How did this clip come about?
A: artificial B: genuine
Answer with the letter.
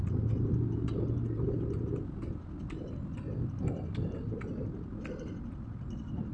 B